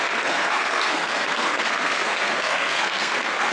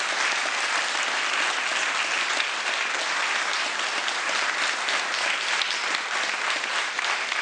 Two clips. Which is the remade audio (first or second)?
first